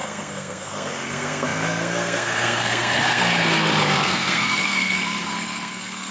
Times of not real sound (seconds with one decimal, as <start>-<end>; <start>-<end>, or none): 0.0-6.1

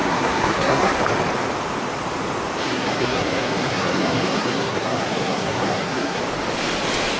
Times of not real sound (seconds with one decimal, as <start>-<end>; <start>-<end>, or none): 0.0-1.0; 2.6-6.2